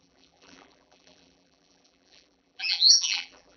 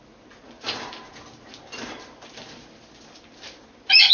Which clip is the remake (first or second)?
first